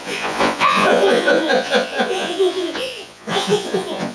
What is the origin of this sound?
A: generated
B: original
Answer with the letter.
A